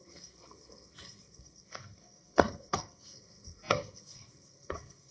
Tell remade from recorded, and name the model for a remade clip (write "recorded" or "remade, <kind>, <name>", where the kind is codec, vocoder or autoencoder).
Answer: remade, codec, SNAC